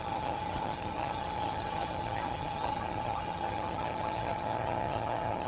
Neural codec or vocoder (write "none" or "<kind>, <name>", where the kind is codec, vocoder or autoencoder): vocoder, HiFi-GAN